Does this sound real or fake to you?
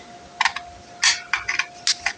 real